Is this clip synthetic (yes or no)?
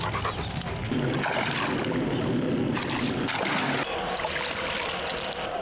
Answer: no